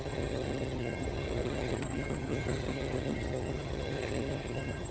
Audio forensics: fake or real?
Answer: fake